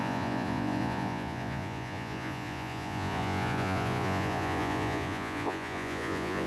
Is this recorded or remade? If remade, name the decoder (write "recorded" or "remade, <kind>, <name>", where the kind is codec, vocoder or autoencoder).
remade, vocoder, Vocos